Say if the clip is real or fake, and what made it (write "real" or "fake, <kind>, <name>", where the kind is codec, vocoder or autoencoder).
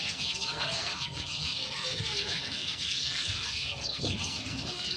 fake, codec, SNAC